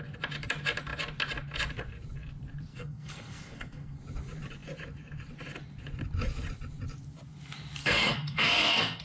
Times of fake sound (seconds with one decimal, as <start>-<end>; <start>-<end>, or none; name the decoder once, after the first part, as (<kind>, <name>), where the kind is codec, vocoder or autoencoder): 2.7-4.0 (codec, SNAC); 7.8-9.0